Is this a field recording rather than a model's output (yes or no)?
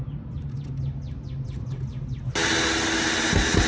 yes